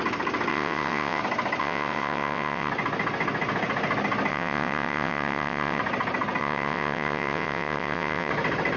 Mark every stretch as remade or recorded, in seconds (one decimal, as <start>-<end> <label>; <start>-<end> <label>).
0.0-0.5 recorded; 0.5-1.2 remade; 1.2-1.6 recorded; 1.6-2.7 remade; 2.7-4.3 recorded; 4.3-5.8 remade; 5.8-6.4 recorded; 6.4-8.3 remade; 8.3-8.8 recorded